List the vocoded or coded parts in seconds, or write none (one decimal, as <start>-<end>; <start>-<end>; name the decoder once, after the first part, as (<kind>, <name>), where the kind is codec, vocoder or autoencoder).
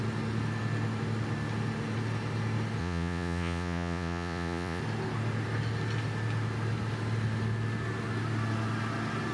2.8-4.8 (vocoder, Vocos)